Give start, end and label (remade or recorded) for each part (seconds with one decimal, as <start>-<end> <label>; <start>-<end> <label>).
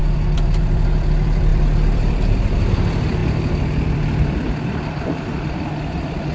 0.0-6.3 remade